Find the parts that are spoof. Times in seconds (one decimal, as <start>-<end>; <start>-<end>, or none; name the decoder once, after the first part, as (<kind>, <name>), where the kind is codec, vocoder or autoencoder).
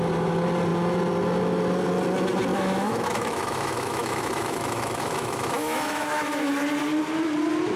2.5-6.5 (autoencoder, DAC-VAE)